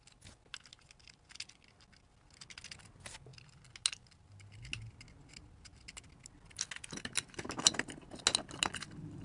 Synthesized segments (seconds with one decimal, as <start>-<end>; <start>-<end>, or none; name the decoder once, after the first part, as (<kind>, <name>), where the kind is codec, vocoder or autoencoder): none